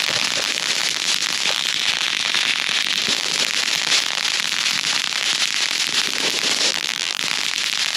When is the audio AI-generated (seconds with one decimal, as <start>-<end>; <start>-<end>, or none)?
6.7-7.2